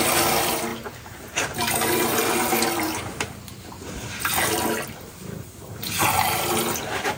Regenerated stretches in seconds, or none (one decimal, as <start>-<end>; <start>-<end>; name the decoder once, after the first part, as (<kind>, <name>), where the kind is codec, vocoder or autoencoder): 0.0-0.7 (vocoder, BigVGAN v2); 5.0-7.2